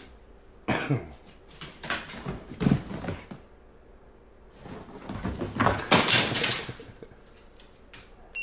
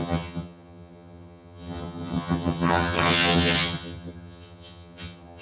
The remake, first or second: second